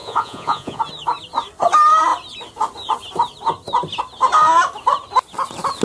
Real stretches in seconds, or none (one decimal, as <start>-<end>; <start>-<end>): 0.8-5.8